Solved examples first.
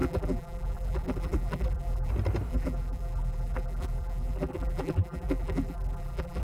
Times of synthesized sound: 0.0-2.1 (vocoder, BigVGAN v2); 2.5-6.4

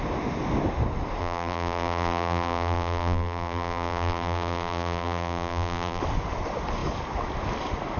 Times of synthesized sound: 1.2-6.0 (vocoder, BigVGAN v2)

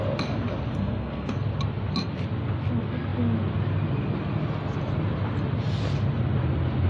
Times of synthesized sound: 0.7-1.3 (codec, SNAC)

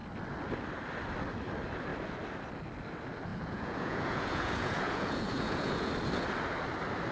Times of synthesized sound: 3.3-5.9 (vocoder, Vocos)